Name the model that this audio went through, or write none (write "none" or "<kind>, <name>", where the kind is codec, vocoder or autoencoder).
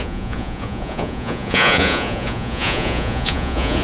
vocoder, Vocos